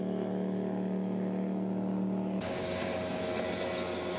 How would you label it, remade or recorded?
recorded